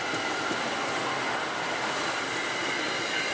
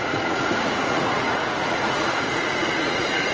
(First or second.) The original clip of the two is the first